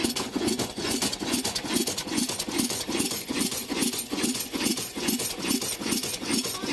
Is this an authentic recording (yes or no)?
no